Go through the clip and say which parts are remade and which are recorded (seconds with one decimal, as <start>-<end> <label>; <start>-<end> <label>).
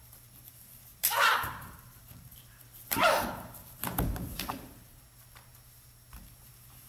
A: 0.0-0.9 recorded; 0.9-5.0 remade; 5.0-6.9 recorded